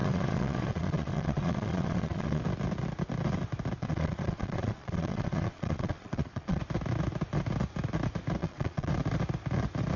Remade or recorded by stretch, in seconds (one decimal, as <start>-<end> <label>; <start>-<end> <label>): 0.0-2.4 remade; 2.4-3.8 recorded; 3.8-6.6 remade; 6.6-8.4 recorded; 8.4-8.9 remade; 8.9-10.0 recorded